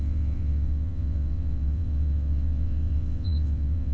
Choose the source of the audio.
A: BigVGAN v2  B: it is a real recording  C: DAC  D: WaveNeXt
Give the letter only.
D